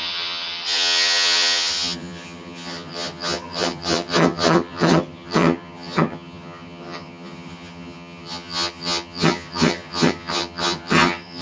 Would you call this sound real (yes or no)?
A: no